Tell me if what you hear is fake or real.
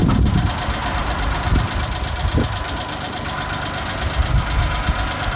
real